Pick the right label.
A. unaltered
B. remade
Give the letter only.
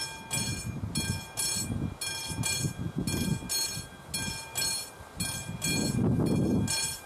A